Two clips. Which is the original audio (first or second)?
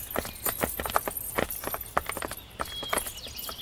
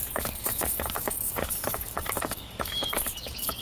first